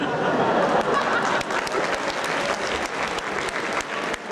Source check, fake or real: real